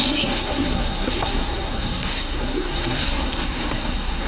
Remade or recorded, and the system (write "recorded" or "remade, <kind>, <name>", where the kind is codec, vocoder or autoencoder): remade, codec, SNAC